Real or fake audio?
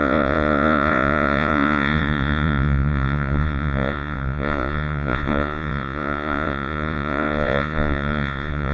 fake